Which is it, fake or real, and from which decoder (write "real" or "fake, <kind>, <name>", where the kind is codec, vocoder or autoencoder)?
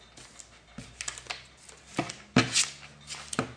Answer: real